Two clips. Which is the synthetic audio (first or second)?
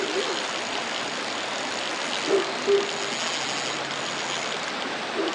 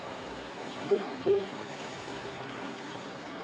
second